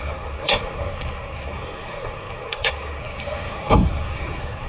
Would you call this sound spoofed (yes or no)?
yes